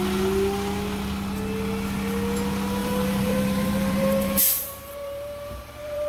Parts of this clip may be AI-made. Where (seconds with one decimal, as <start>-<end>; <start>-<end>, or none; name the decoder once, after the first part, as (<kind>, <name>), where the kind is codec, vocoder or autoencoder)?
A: 2.8-6.1 (vocoder, BigVGAN v2)